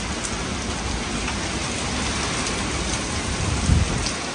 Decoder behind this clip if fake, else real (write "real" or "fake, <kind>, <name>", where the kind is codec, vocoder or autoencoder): real